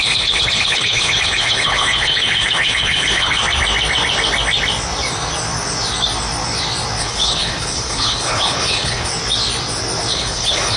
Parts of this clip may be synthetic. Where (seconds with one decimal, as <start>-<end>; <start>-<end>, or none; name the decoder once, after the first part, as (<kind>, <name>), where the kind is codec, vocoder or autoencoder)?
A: 0.0-3.4 (codec, HILCodec); 7.0-9.1; 10.1-10.8